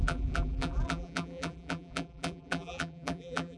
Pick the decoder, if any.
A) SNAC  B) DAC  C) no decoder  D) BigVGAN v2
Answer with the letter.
D